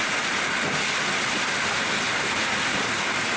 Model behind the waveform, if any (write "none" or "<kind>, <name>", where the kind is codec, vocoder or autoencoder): none